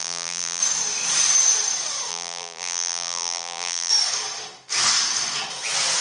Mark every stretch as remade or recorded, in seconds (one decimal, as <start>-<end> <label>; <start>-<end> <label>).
0.0-0.6 remade; 0.6-2.1 recorded; 2.1-3.9 remade; 3.9-6.0 recorded